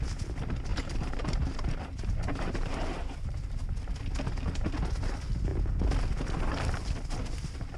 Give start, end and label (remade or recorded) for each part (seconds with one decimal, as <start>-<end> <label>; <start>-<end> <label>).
0.0-0.7 recorded; 0.7-3.6 remade; 3.6-7.8 recorded